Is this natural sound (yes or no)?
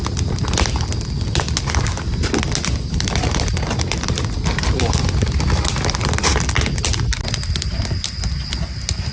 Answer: yes